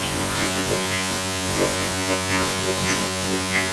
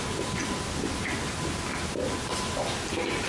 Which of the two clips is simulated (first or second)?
first